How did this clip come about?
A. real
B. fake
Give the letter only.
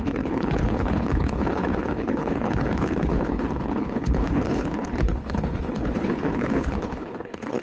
B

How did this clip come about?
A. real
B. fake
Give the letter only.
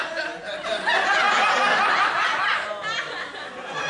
A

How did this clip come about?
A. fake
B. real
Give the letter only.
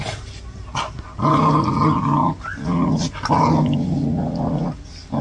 B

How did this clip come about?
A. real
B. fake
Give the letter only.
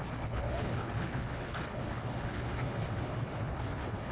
B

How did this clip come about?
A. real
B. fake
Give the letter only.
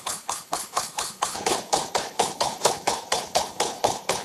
B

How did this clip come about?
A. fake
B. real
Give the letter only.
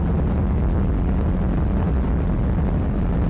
B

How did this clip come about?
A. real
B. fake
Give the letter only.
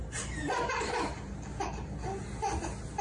A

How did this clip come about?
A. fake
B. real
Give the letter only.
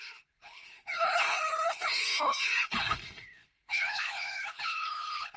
A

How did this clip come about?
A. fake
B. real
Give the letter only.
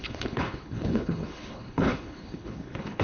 A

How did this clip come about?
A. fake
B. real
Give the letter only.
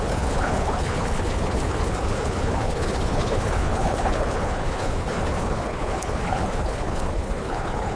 A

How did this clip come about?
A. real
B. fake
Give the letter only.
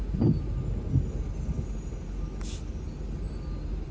A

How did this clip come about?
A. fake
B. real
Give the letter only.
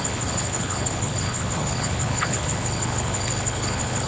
A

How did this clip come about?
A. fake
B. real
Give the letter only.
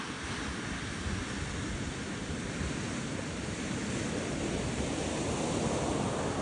B